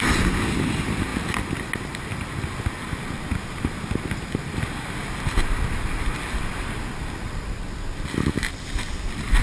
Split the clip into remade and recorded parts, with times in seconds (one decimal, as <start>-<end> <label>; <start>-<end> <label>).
0.0-9.4 recorded